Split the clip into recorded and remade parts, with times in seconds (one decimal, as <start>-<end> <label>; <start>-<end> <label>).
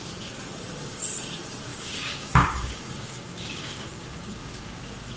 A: 0.0-1.7 recorded; 1.7-4.8 remade; 4.8-5.2 recorded